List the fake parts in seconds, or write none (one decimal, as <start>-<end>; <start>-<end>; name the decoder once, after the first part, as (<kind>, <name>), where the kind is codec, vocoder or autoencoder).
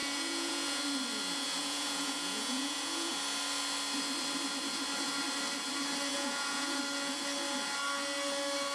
0.0-0.8 (vocoder, Vocos); 1.6-3.1; 6.1-6.8